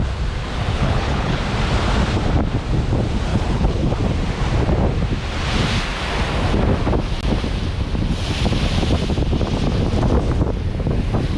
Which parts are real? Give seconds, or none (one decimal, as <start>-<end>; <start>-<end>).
0.0-0.7; 1.4-3.3; 3.9-11.4